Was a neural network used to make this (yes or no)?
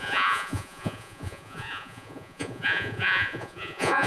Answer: yes